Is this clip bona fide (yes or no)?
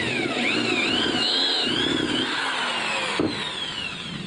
yes